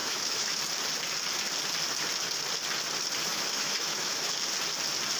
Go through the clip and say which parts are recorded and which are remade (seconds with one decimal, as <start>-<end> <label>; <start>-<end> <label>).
0.0-0.6 remade; 0.6-3.3 recorded; 3.3-4.3 remade; 4.3-5.2 recorded

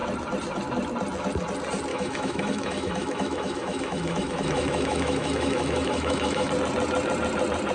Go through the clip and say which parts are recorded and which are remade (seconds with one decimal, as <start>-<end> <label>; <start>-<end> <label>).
0.0-1.9 recorded; 1.9-6.5 remade; 6.5-7.7 recorded

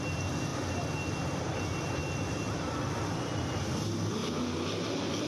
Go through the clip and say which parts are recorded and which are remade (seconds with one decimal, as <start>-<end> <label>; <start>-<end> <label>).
0.0-5.3 recorded

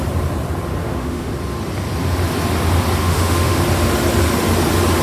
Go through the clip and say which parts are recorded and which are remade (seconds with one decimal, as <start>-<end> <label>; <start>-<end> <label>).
0.0-0.8 recorded; 0.8-1.3 remade; 1.3-3.0 recorded; 3.0-3.6 remade; 3.6-5.0 recorded